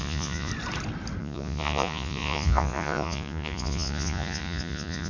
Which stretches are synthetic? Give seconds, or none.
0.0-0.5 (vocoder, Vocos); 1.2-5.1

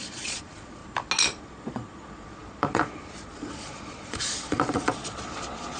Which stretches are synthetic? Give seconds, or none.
0.0-0.8 (vocoder, Vocos); 1.4-5.8

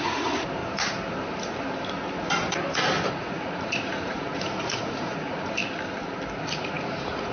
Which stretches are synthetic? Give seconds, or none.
0.0-0.6 (vocoder, Vocos); 3.1-5.6; 6.4-7.3